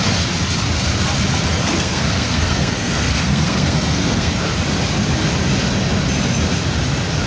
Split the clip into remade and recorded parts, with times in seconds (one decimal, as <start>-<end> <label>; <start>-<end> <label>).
0.0-1.5 recorded; 1.5-4.3 remade; 4.3-7.3 recorded